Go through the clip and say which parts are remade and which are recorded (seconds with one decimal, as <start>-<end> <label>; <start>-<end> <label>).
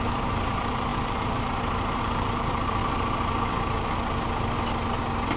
0.0-2.8 remade; 2.8-5.4 recorded